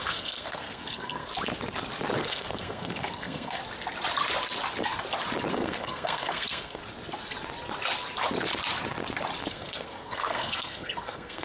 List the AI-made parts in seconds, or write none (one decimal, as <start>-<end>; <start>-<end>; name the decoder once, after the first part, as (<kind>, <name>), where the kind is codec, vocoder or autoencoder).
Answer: 0.0-1.3 (codec, SNAC); 2.2-3.6; 5.5-6.8; 9.5-11.4